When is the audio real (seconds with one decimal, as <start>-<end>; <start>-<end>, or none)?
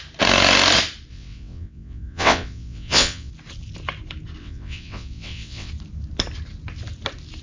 0.0-1.1; 3.3-4.4; 5.7-7.4